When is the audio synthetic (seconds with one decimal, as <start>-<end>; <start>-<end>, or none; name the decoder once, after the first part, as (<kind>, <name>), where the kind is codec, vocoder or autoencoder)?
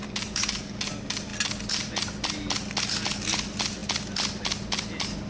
none